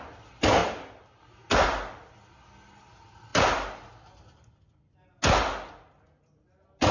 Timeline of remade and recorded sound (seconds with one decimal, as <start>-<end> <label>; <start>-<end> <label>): 0.0-6.9 recorded